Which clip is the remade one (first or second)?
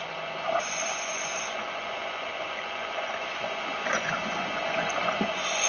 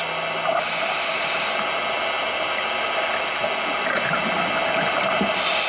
first